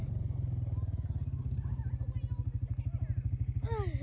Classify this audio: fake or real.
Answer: real